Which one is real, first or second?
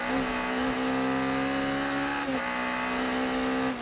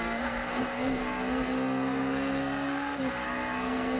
first